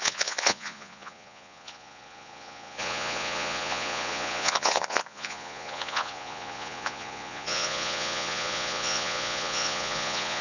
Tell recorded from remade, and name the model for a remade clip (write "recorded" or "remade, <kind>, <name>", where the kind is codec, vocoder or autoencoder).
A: remade, vocoder, Vocos